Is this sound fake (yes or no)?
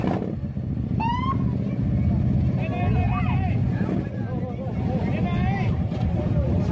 no